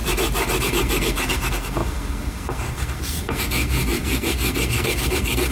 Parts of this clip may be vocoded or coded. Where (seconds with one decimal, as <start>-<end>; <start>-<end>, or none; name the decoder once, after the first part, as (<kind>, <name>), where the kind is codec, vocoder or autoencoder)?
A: 0.6-5.5 (codec, SNAC)